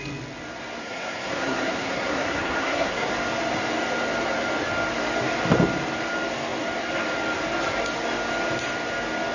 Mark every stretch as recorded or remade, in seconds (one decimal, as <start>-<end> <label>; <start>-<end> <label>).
0.0-0.8 recorded; 0.8-3.1 remade; 3.1-9.3 recorded